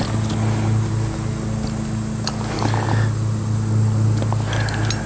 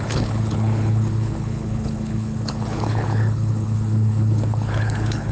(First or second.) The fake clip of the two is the second